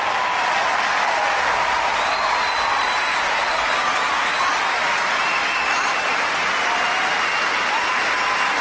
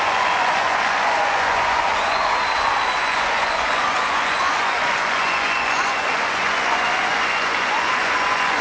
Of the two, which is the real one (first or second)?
first